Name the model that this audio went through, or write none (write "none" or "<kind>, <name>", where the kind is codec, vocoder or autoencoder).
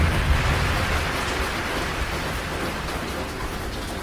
none